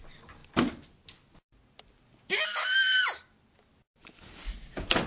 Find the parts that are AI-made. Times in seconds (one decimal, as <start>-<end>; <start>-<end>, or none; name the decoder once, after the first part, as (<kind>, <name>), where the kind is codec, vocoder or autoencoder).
none